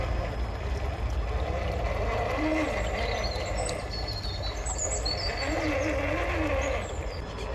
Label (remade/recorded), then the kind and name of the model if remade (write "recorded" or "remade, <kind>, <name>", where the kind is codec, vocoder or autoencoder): recorded